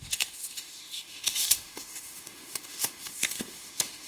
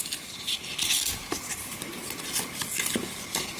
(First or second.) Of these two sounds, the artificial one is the first